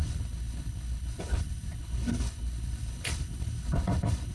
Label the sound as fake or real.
fake